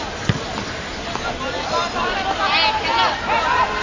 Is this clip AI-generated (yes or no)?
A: no